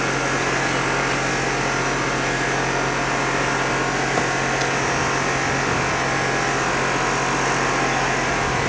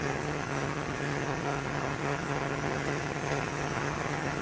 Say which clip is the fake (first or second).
second